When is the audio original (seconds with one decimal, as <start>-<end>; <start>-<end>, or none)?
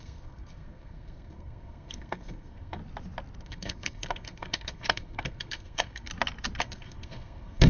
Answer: 2.8-3.4; 6.1-6.6